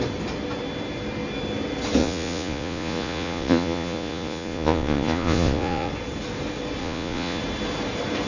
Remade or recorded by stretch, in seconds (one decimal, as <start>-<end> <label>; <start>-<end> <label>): 0.0-2.0 recorded; 2.0-5.9 remade; 5.9-6.8 recorded; 6.8-7.4 remade; 7.4-8.3 recorded